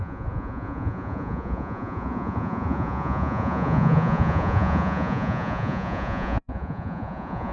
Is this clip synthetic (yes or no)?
yes